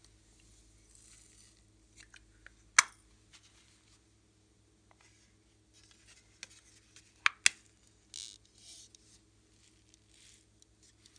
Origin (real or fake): real